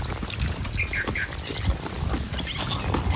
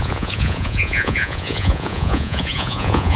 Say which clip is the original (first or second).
first